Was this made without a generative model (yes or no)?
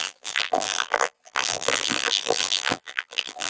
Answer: no